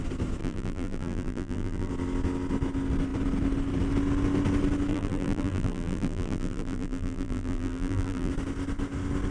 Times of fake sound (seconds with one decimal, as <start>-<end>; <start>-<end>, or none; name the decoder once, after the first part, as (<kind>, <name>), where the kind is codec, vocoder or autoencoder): 0.4-1.9 (vocoder, BigVGAN v2); 4.9-8.3